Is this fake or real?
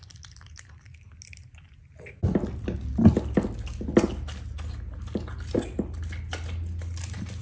real